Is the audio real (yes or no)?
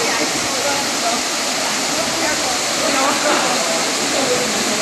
yes